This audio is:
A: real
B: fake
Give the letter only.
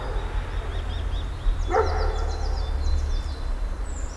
A